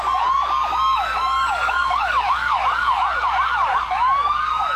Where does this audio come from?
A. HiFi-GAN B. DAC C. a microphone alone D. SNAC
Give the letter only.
B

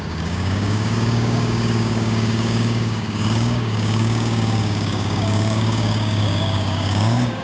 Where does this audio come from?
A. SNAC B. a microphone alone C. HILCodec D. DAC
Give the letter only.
D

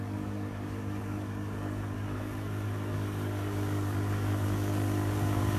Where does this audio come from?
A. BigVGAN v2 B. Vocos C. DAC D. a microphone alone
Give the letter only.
C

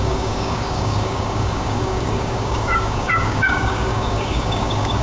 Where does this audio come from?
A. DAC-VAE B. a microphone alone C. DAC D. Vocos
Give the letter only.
C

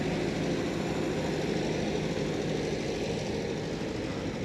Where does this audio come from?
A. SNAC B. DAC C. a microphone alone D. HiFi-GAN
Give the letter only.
C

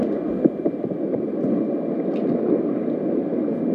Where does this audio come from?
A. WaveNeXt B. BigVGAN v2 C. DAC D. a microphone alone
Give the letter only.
D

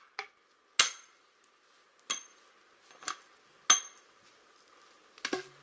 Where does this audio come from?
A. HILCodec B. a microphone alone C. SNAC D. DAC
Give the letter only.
B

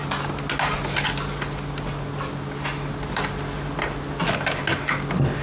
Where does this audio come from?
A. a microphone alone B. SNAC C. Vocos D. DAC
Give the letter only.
A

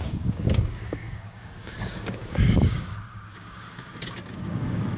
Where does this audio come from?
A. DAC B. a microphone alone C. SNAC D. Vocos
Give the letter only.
A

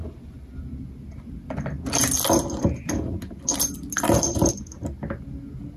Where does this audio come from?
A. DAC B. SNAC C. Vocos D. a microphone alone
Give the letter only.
D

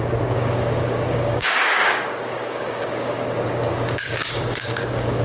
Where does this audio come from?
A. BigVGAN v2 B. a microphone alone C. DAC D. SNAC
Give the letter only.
C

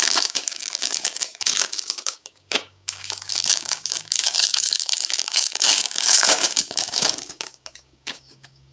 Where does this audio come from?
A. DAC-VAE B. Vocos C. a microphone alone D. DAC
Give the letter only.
D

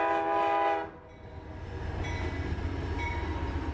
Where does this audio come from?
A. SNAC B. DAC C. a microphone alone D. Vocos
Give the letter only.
C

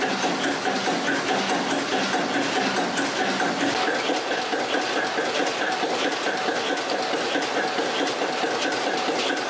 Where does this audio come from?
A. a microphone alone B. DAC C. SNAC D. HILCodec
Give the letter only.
A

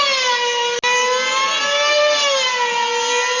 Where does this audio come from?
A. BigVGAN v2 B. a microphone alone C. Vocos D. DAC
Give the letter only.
B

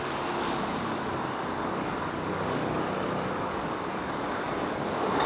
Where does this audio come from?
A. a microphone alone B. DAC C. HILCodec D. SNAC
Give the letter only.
B